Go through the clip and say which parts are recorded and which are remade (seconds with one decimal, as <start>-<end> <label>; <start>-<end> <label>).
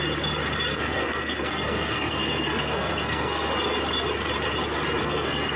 0.0-0.7 recorded; 0.7-3.5 remade; 3.5-5.0 recorded; 5.0-5.6 remade